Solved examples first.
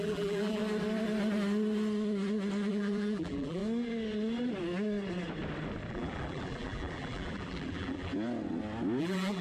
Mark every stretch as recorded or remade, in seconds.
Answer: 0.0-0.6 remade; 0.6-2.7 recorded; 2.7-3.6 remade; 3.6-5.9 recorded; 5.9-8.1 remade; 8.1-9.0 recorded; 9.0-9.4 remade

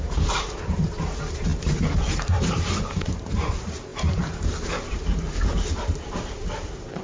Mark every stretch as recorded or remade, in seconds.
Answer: 0.0-1.5 remade; 1.5-2.0 recorded; 2.0-7.0 remade

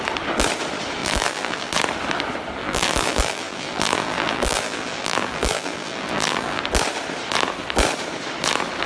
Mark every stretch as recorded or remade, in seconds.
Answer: 0.0-1.0 recorded; 1.0-1.7 remade; 1.7-2.6 recorded; 2.6-6.6 remade; 6.6-8.9 recorded

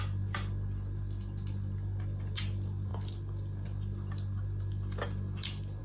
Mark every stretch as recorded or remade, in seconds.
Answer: 0.0-5.8 recorded